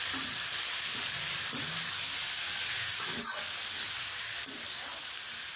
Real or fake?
real